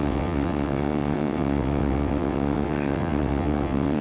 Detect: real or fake fake